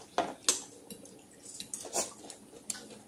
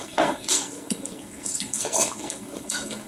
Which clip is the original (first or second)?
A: first